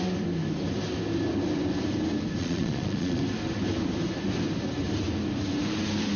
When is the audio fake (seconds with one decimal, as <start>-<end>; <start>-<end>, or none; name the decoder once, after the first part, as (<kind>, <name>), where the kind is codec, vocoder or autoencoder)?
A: 2.4-3.2 (vocoder, Vocos)